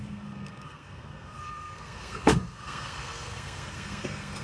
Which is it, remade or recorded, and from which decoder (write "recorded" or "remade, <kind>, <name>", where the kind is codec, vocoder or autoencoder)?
remade, codec, SNAC